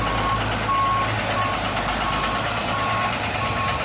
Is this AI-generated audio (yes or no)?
no